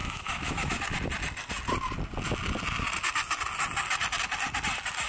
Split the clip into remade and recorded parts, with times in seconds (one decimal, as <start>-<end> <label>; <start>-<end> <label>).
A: 0.0-0.8 remade; 0.8-5.1 recorded